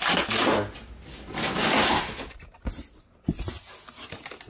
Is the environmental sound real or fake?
real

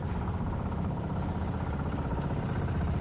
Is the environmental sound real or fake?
fake